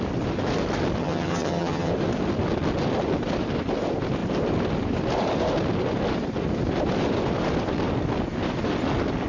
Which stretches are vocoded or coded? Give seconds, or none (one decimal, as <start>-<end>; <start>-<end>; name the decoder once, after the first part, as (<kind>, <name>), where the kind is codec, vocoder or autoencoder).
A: 1.0-1.9 (vocoder, HiFi-GAN)